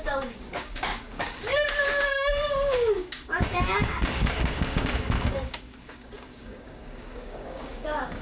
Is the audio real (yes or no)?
no